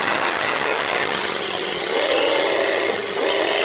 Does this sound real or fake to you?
fake